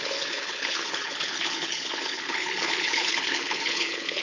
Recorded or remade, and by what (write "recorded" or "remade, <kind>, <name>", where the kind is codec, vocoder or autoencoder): remade, codec, HILCodec